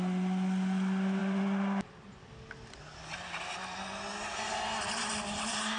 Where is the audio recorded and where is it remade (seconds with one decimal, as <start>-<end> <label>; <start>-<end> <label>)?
0.0-5.8 recorded